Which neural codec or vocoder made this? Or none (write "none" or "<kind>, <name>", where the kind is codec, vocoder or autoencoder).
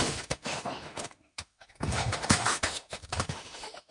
autoencoder, DAC-VAE